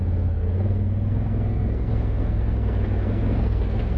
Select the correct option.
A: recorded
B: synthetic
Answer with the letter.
B